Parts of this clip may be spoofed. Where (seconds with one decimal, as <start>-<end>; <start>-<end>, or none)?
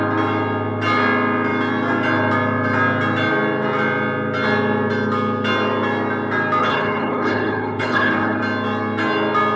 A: 6.6-8.4